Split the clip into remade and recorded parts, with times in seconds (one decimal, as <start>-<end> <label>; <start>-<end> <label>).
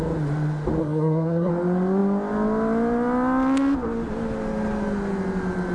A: 0.0-0.8 recorded; 0.8-1.5 remade; 1.5-5.7 recorded